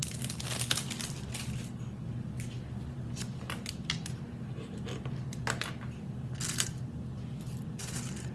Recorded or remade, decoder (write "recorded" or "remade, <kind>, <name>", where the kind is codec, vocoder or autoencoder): recorded